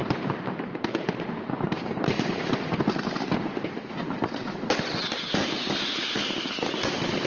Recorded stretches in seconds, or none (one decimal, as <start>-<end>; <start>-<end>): 2.5-7.3